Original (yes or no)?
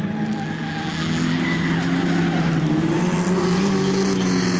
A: yes